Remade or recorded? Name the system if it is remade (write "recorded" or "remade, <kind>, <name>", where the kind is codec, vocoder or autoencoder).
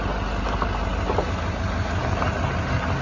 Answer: recorded